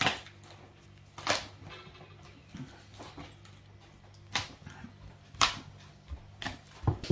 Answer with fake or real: real